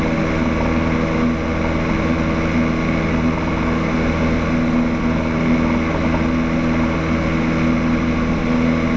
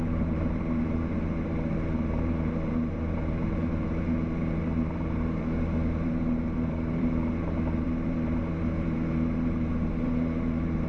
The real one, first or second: first